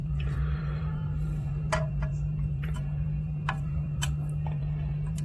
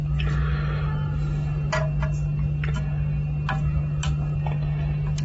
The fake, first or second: first